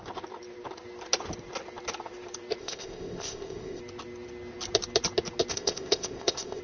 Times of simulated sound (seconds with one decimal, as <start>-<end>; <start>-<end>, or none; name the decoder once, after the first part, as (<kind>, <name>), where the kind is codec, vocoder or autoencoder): 2.6-3.8 (codec, ZipCodec); 5.5-6.6